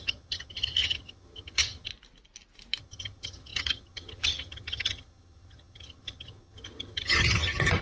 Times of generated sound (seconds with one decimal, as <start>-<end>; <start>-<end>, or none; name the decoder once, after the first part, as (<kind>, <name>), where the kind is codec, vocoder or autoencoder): 0.0-1.9 (vocoder, HiFi-GAN); 2.8-7.8